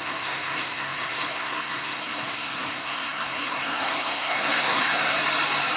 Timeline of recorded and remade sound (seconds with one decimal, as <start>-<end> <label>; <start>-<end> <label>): 0.0-5.2 remade; 5.2-5.8 recorded